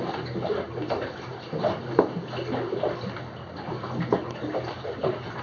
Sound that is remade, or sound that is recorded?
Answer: recorded